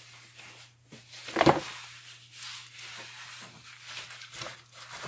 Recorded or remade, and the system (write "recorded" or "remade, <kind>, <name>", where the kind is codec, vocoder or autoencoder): recorded